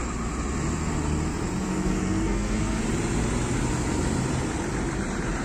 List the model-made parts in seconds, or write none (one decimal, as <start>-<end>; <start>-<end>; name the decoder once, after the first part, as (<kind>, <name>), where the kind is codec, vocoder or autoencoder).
1.6-2.8 (codec, SNAC)